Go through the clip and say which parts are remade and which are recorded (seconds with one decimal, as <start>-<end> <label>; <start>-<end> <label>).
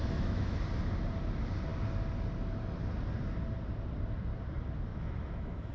0.0-0.6 remade; 0.6-4.9 recorded; 4.9-5.7 remade